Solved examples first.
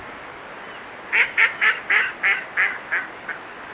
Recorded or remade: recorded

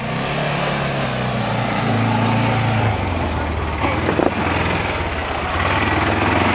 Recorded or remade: recorded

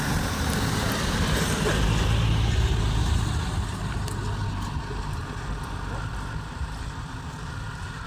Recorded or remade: recorded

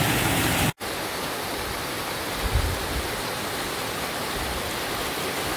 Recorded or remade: recorded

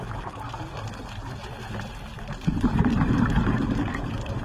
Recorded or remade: recorded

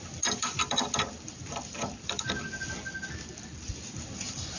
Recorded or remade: remade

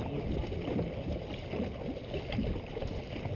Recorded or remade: recorded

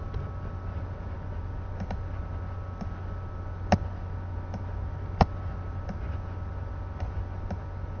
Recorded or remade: recorded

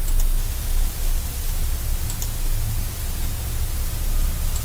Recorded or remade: recorded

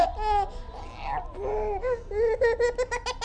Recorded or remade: recorded